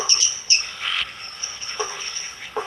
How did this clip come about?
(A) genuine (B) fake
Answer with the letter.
B